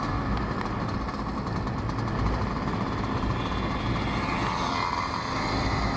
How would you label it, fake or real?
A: real